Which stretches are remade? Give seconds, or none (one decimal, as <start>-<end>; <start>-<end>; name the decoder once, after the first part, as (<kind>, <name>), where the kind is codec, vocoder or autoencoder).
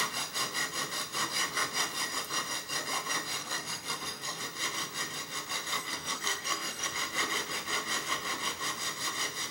3.4-4.4 (codec, SNAC); 5.7-6.9